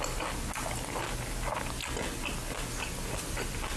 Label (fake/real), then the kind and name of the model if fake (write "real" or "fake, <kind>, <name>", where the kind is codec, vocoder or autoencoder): real